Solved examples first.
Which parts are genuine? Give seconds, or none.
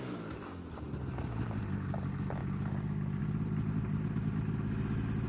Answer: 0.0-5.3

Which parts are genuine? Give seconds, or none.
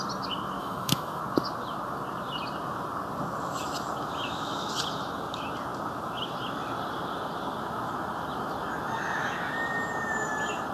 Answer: 0.0-0.6; 1.2-10.7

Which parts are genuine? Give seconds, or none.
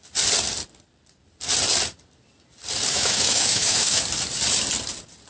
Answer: 0.0-2.9; 4.0-5.3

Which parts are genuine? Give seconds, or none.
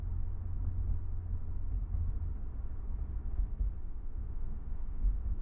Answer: 0.0-3.9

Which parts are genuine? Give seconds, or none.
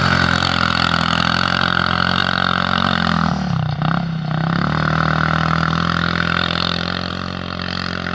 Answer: 0.0-8.1